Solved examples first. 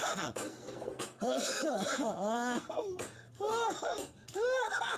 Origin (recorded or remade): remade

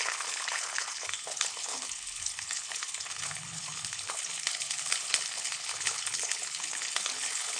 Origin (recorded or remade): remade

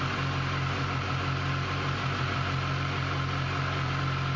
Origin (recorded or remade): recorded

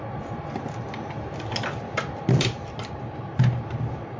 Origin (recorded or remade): recorded